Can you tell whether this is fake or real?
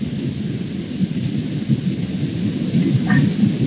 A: real